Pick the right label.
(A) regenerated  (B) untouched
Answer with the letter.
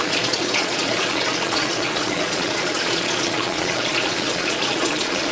A